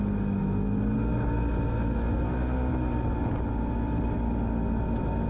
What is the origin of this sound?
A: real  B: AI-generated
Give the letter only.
A